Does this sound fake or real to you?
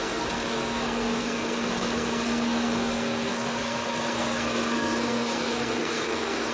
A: fake